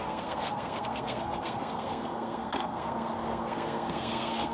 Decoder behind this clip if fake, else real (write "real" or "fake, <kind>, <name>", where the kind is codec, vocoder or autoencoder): fake, codec, SNAC